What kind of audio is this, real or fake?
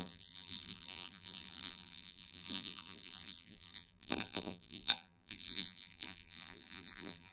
fake